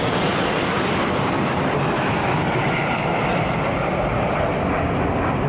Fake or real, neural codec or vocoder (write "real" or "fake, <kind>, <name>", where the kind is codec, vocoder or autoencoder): real